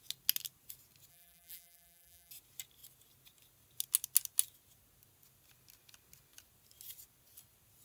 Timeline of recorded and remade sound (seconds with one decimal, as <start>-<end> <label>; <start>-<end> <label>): 0.0-1.1 recorded; 1.1-2.3 remade; 2.3-7.8 recorded